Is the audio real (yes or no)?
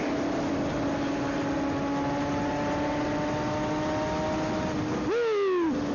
yes